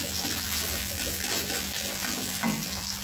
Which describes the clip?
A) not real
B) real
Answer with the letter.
A